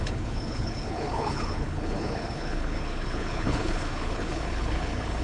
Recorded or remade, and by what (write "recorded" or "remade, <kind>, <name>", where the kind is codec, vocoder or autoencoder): remade, codec, HILCodec